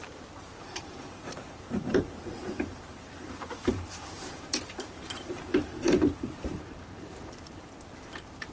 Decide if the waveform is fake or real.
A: fake